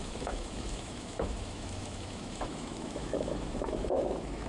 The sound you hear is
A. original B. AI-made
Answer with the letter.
B